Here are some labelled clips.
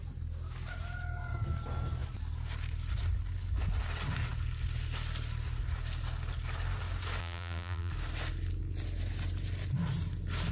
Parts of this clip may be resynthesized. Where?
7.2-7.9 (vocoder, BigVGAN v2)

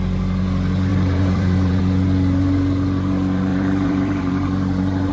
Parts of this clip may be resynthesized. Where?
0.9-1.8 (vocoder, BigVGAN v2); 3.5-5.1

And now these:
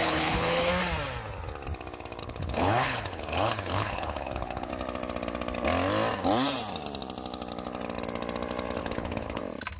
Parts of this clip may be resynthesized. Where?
0.0-0.7 (codec, HILCodec); 2.2-4.7; 8.8-9.4

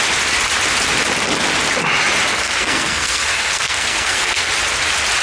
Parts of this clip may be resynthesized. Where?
2.3-4.5 (codec, SNAC)

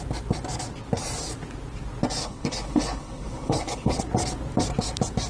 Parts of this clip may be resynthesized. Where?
2.2-4.0 (codec, HILCodec)

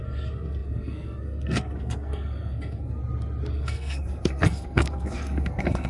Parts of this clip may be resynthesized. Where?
0.0-3.0 (codec, SNAC); 3.5-5.9